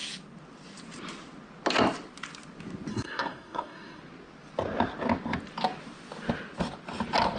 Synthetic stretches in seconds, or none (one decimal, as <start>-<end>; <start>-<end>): 2.9-4.0